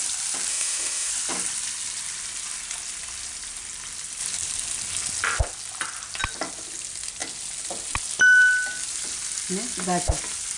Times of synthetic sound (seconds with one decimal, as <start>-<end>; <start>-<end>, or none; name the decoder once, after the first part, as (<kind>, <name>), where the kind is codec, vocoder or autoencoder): 0.5-1.1 (autoencoder, DAC-VAE)